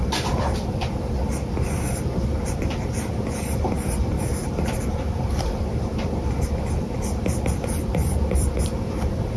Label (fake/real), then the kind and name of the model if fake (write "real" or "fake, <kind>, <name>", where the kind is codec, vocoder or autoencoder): real